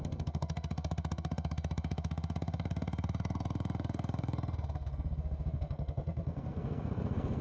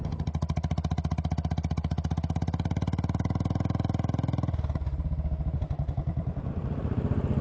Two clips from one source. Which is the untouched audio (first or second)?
second